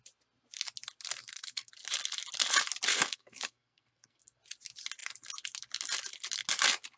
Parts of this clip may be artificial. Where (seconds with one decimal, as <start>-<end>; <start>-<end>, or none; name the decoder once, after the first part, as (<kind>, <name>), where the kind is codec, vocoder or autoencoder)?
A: 1.2-1.7 (codec, SNAC); 2.9-4.4